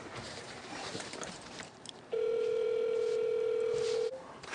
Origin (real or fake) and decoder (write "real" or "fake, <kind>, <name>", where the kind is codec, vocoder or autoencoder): fake, vocoder, BigVGAN v2